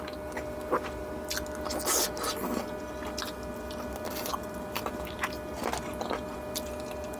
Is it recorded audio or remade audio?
recorded